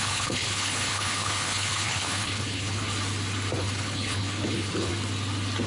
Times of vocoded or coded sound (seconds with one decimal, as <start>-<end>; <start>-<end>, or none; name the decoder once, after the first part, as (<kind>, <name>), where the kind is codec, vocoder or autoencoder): 0.0-2.8 (codec, HILCodec); 3.6-4.9